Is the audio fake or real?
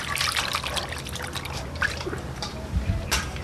fake